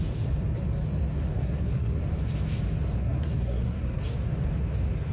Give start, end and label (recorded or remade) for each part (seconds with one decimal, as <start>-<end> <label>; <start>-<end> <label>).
0.0-1.3 recorded; 1.3-1.9 remade; 1.9-3.0 recorded; 3.0-4.0 remade; 4.0-5.1 recorded